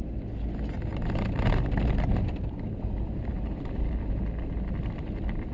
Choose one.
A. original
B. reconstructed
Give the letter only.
A